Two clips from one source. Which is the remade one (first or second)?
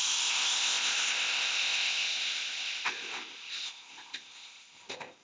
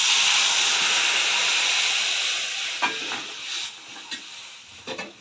first